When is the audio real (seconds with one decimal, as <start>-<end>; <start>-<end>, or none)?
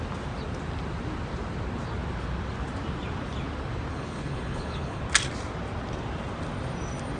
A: 0.0-3.9; 5.0-7.2